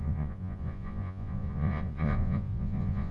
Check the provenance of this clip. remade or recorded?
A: remade